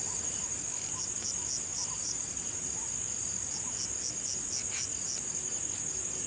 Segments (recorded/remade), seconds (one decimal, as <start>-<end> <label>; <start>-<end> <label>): 0.0-0.6 remade; 0.6-1.7 recorded; 1.7-2.9 remade; 2.9-6.3 recorded